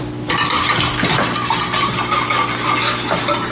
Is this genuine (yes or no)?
yes